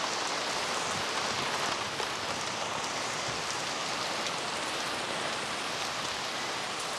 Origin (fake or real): real